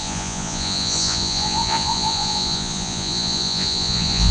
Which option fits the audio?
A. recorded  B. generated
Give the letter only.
B